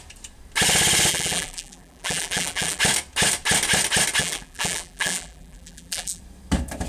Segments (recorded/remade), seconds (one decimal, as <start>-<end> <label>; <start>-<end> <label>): 0.0-1.1 recorded; 1.1-2.8 remade; 2.8-4.2 recorded; 4.2-6.2 remade; 6.2-6.9 recorded